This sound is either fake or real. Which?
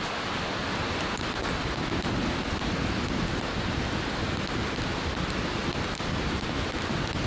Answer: real